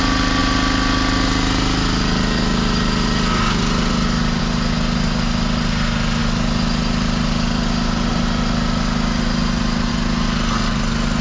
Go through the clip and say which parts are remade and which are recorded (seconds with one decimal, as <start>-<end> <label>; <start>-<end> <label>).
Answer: 0.0-11.2 recorded